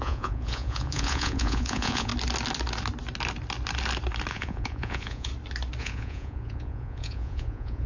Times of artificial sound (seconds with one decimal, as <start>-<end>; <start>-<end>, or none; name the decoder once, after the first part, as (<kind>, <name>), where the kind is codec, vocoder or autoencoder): 0.0-2.1 (vocoder, Vocos); 4.3-5.3; 5.8-7.9